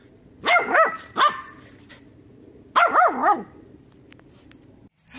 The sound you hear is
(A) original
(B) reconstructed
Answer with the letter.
A